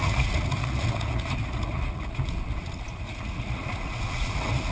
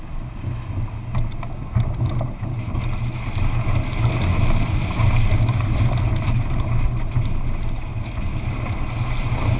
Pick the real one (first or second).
second